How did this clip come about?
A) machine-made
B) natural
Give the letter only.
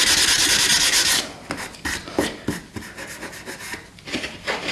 B